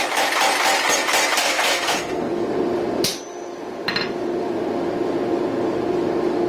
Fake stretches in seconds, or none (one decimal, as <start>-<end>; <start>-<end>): 1.4-2.5